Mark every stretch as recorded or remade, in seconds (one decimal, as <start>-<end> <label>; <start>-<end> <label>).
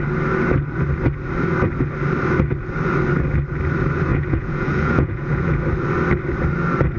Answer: 0.0-4.1 recorded; 4.1-5.6 remade; 5.6-7.0 recorded